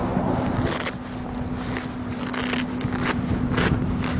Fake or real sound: real